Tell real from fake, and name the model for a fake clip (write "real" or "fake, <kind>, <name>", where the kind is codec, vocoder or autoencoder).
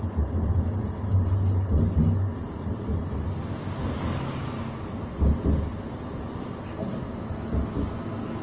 real